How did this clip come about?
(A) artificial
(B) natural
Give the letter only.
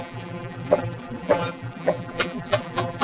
A